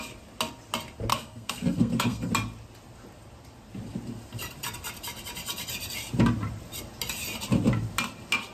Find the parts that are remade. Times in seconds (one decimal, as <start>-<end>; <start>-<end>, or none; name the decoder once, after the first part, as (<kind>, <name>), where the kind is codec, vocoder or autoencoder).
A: 1.1-2.3 (codec, SNAC)